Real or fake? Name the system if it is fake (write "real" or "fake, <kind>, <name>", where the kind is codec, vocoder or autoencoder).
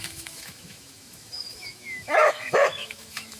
fake, autoencoder, DAC-VAE